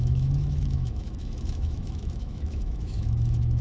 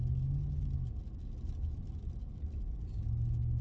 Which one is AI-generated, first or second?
first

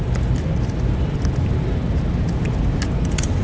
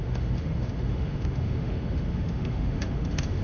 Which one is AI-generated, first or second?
second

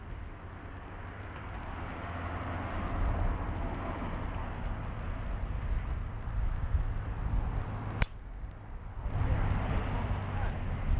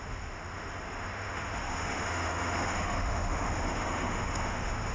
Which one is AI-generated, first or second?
second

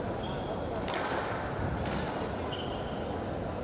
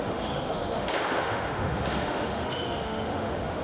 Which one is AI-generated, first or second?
second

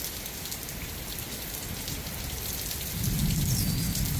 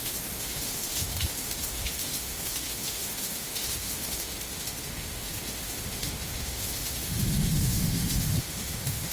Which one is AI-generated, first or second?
second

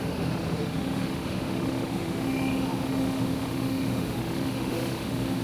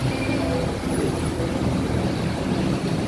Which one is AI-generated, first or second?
first